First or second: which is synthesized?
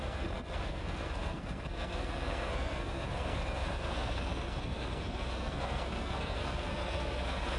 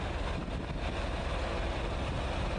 first